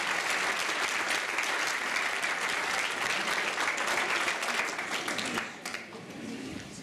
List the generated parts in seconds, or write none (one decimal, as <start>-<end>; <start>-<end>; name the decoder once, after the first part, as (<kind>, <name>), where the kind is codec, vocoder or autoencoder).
none